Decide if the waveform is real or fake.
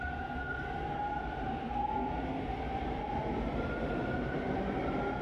real